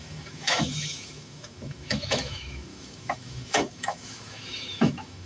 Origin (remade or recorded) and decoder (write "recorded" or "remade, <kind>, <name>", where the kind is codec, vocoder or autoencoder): remade, autoencoder, DAC-VAE